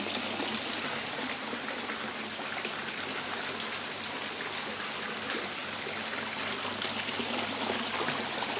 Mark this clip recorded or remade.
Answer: recorded